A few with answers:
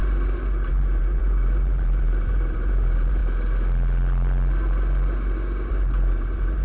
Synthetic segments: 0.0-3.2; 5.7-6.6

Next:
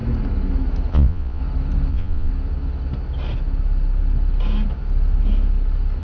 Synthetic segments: 0.9-1.4; 1.9-2.3